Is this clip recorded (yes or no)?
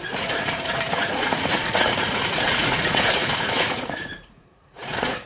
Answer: no